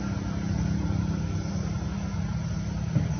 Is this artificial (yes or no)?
no